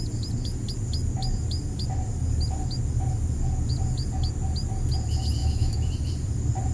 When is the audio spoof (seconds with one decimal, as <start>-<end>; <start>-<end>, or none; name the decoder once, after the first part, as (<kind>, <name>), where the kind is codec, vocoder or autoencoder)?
5.4-5.9 (autoencoder, DAC-VAE)